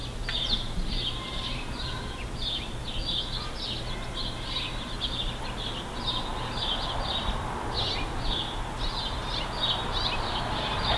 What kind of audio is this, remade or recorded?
recorded